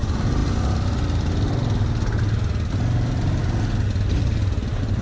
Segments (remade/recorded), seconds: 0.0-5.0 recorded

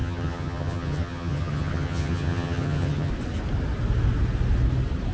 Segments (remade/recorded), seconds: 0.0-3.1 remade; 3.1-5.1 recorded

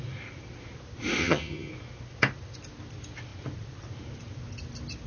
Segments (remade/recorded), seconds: 0.0-1.2 recorded; 1.2-1.7 remade; 1.7-5.1 recorded